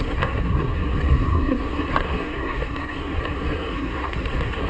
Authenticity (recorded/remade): remade